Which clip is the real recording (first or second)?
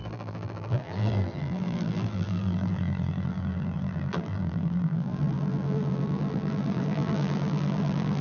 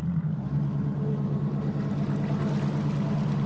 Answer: second